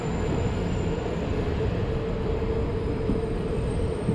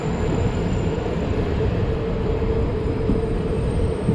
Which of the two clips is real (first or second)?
first